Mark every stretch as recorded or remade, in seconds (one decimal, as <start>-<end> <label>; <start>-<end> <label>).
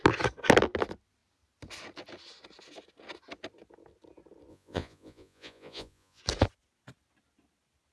0.0-4.5 recorded; 4.5-6.2 remade; 6.2-7.9 recorded